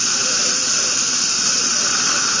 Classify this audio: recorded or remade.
remade